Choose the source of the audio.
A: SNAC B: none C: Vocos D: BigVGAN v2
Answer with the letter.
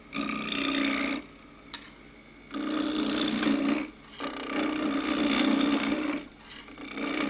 B